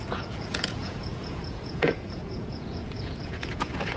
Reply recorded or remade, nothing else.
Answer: remade